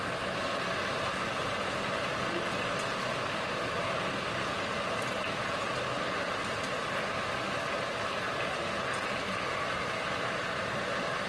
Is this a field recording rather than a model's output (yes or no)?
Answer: yes